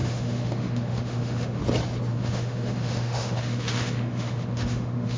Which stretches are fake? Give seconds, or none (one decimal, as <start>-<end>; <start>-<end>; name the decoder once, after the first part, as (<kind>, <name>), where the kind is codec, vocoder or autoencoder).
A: 0.0-1.6 (autoencoder, DAC-VAE); 2.1-5.2

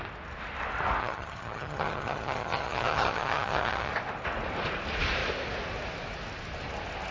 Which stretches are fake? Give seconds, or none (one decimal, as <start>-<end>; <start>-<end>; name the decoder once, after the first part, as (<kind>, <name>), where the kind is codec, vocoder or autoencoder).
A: 1.0-3.9 (vocoder, HiFi-GAN)

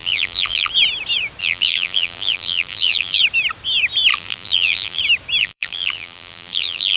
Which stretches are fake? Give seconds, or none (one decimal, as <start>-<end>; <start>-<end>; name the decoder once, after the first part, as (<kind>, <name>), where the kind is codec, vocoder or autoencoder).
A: 0.0-0.7 (vocoder, BigVGAN v2); 1.4-3.2; 4.1-5.0; 5.4-7.0